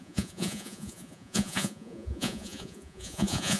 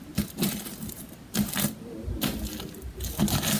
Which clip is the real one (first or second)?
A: second